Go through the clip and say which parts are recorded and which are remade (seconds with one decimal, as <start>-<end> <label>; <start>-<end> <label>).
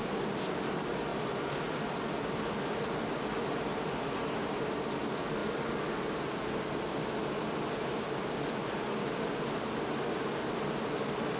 0.0-11.4 recorded